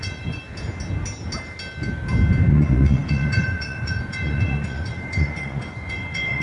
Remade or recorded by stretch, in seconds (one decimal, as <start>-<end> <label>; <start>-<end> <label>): 0.0-0.4 remade; 0.4-2.5 recorded; 2.5-6.4 remade